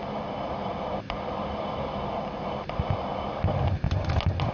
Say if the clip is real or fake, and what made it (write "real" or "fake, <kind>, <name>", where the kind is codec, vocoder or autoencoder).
real